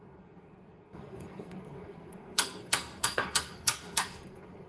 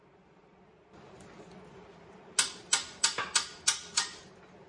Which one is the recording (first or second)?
second